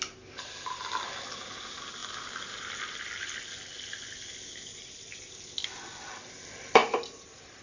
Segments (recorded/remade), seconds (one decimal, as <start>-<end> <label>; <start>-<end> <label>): 0.0-4.7 recorded; 4.7-5.3 remade; 5.3-6.8 recorded; 6.8-7.6 remade